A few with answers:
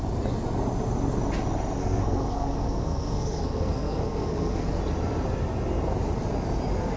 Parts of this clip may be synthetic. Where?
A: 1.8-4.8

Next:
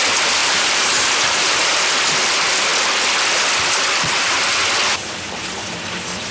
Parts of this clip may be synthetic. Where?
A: 0.4-1.8

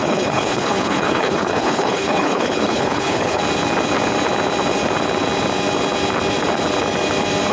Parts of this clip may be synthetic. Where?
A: 0.0-3.4